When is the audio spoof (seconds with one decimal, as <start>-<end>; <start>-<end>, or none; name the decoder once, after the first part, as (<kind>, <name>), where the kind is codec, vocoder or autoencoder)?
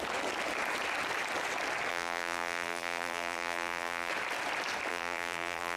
1.9-4.1 (vocoder, BigVGAN v2); 4.9-5.8